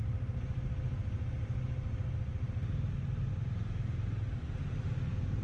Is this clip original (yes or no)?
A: yes